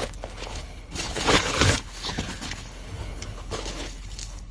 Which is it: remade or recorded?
remade